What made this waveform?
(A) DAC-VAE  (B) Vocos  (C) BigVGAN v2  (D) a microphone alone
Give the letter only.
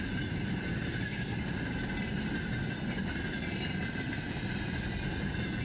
D